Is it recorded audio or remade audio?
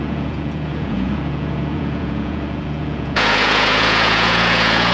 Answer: remade